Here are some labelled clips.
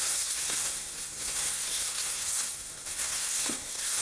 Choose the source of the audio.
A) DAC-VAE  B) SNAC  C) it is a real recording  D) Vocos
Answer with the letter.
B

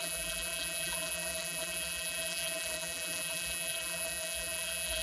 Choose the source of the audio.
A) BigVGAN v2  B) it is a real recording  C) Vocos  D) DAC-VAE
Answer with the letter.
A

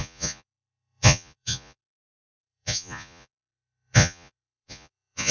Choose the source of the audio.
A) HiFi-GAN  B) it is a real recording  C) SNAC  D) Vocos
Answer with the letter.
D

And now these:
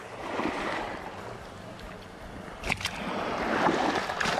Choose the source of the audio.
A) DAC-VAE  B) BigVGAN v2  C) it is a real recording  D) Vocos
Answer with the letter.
C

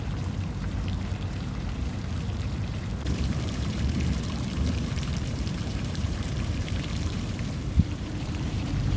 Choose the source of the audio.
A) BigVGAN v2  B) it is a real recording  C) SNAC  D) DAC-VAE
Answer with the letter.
A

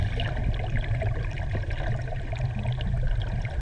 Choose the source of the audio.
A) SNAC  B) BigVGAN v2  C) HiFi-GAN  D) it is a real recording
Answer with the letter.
D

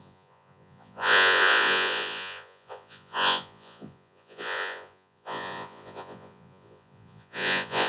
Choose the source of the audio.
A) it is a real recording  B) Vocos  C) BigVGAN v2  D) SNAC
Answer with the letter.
B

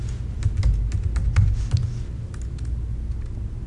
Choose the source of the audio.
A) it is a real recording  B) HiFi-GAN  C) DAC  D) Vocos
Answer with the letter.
A